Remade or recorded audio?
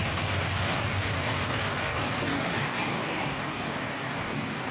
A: remade